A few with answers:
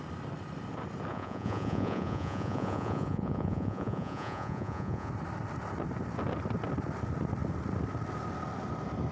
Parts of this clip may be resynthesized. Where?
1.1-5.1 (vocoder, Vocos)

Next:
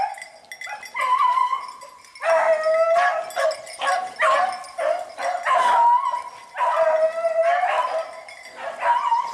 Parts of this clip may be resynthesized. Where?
1.1-1.6 (codec, SNAC)

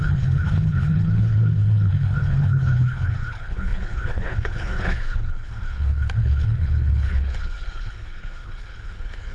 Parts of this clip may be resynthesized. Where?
0.0-9.3 (codec, HILCodec)

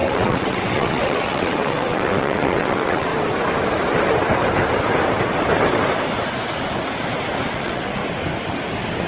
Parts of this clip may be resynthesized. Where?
0.0-3.1 (vocoder, WaveNeXt); 7.5-8.0

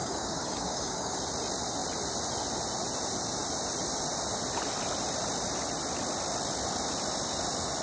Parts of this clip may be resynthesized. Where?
0.0-1.2 (codec, DAC)

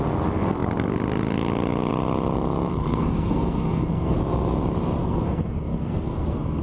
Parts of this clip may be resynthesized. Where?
2.7-4.2 (codec, SNAC); 5.0-6.6

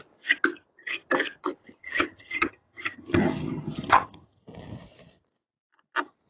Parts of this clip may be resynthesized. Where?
1.8-4.4 (vocoder, HiFi-GAN)